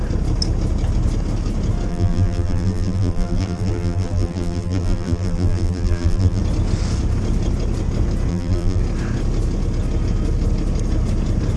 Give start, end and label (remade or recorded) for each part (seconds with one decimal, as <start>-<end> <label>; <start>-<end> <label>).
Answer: 0.0-1.9 recorded; 1.9-6.4 remade; 6.4-8.3 recorded; 8.3-8.8 remade; 8.8-11.6 recorded